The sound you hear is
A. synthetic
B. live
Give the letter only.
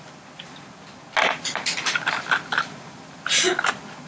B